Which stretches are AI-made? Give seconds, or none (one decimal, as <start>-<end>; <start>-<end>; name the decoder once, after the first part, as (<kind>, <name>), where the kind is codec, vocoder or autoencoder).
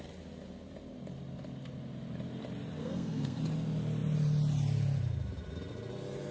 2.8-3.4 (codec, SNAC)